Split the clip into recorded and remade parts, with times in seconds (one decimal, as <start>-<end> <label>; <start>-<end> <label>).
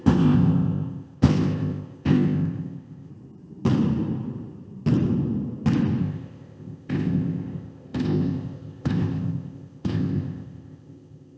0.0-3.1 remade; 3.1-6.0 recorded; 6.0-11.4 remade